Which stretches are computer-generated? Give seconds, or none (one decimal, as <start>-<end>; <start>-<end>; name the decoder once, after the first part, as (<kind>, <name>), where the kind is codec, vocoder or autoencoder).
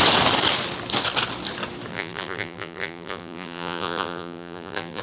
1.9-5.0 (vocoder, BigVGAN v2)